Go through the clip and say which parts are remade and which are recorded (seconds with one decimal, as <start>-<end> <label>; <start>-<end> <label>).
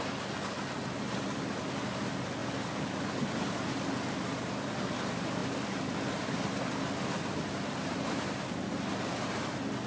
0.0-9.9 recorded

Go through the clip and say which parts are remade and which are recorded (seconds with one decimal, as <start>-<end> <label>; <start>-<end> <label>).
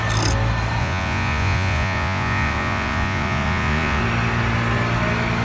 0.0-0.8 recorded; 0.8-4.0 remade; 4.0-5.4 recorded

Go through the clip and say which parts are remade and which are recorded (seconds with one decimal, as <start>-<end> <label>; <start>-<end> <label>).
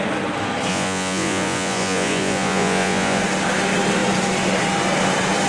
0.0-0.7 recorded; 0.7-3.2 remade; 3.2-5.5 recorded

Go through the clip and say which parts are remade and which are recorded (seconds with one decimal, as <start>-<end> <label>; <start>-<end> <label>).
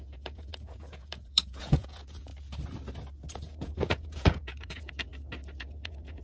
0.0-2.3 remade; 2.3-3.3 recorded; 3.3-5.1 remade; 5.1-5.6 recorded; 5.6-6.2 remade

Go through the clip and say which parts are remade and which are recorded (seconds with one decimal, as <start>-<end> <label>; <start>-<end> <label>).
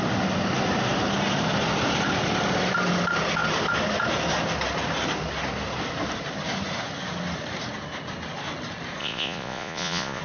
0.0-9.0 recorded; 9.0-10.2 remade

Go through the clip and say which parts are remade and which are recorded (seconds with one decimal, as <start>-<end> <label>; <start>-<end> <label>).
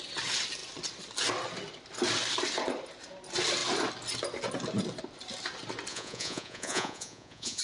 0.0-5.9 recorded; 5.9-7.6 remade